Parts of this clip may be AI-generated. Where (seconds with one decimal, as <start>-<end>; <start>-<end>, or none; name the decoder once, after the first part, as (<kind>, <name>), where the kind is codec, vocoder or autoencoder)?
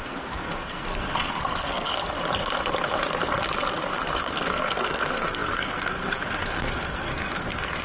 0.0-1.9 (codec, SNAC); 3.8-7.8